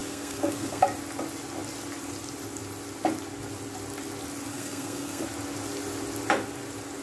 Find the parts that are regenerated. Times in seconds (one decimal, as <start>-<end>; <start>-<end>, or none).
0.0-0.8; 4.5-5.2